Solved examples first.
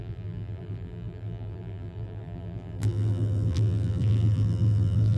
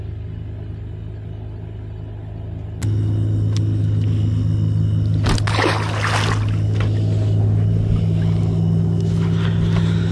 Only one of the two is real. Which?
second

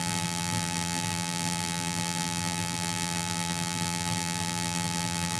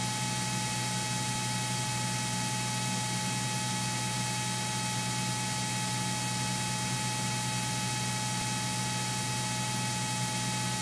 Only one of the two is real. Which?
second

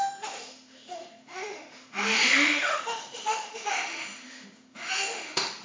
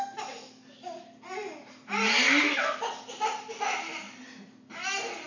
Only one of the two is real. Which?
second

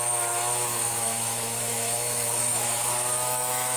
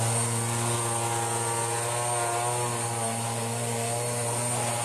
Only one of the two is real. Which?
second